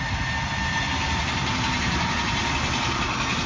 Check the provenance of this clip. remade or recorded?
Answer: recorded